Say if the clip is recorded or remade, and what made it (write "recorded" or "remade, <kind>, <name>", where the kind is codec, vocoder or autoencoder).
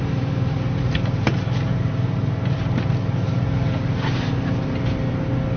recorded